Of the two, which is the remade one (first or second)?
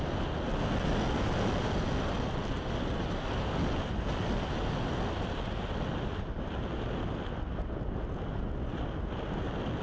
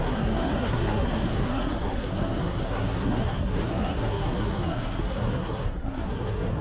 second